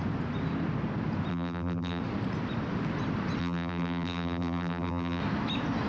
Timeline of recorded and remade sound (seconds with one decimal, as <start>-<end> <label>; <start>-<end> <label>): 0.0-1.3 recorded; 1.3-2.0 remade; 2.0-3.4 recorded; 3.4-5.2 remade; 5.2-5.9 recorded